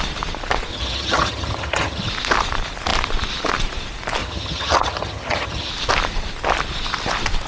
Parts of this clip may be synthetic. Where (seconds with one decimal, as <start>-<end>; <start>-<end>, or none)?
0.7-2.1; 4.2-5.7